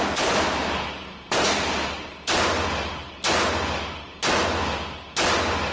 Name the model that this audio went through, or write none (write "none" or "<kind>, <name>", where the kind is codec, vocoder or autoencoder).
none